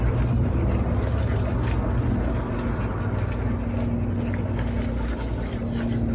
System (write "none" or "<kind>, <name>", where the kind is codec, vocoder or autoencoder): none